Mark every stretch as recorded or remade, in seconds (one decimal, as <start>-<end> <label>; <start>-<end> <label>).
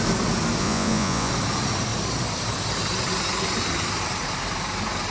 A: 0.0-0.6 recorded; 0.6-1.3 remade; 1.3-5.1 recorded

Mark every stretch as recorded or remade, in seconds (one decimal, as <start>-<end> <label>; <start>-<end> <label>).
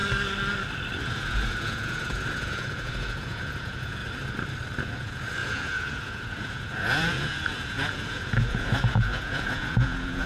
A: 0.0-1.0 recorded; 1.0-4.0 remade; 4.0-4.8 recorded; 4.8-10.3 remade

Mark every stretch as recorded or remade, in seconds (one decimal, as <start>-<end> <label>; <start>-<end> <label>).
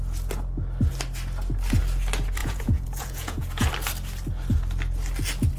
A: 0.0-2.4 recorded; 2.4-3.7 remade; 3.7-5.6 recorded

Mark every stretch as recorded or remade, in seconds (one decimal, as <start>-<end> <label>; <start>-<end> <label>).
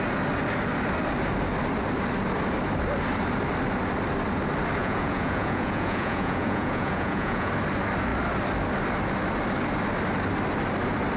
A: 0.0-4.8 recorded; 4.8-7.5 remade; 7.5-11.2 recorded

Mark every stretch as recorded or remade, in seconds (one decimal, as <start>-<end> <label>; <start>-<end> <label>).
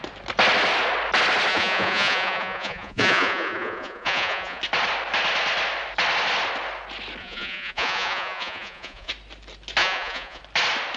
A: 0.0-1.5 recorded; 1.5-4.6 remade; 4.6-7.2 recorded; 7.2-9.1 remade; 9.1-9.8 recorded; 9.8-10.4 remade; 10.4-11.0 recorded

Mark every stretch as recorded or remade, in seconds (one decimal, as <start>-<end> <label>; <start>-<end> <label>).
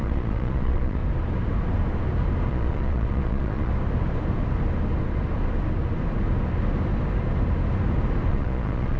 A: 0.0-1.0 remade; 1.0-2.5 recorded; 2.5-3.7 remade; 3.7-8.3 recorded; 8.3-9.0 remade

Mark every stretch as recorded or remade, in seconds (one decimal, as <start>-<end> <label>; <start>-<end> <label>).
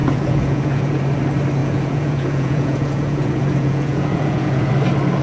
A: 0.0-1.0 remade; 1.0-1.6 recorded; 1.6-4.7 remade; 4.7-5.2 recorded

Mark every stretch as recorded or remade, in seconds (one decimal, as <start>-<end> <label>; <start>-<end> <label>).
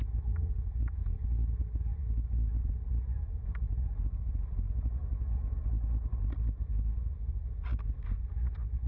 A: 0.0-8.9 recorded